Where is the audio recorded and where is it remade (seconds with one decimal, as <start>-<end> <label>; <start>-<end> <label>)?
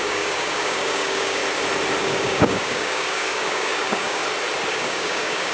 0.0-1.4 remade; 1.4-2.0 recorded; 2.0-4.2 remade; 4.2-4.7 recorded; 4.7-5.5 remade